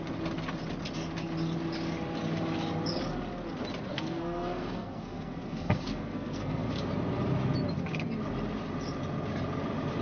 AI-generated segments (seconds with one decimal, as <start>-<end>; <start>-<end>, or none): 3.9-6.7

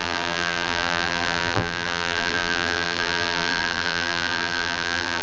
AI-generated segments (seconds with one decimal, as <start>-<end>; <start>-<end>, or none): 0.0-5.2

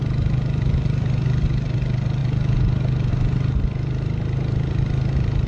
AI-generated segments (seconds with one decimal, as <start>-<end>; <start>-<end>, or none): none